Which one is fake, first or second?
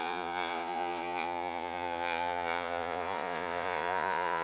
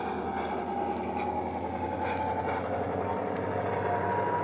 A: first